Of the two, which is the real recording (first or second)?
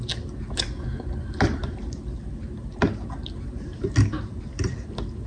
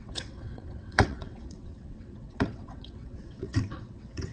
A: first